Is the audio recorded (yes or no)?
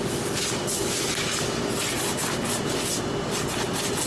yes